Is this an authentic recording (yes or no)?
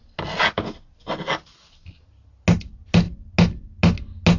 yes